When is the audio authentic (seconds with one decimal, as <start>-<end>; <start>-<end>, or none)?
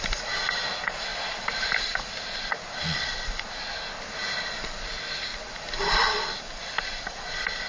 0.0-1.1; 3.1-5.3; 6.4-7.7